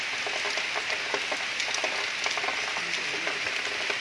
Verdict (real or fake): real